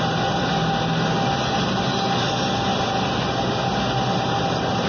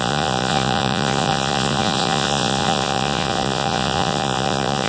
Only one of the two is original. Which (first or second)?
first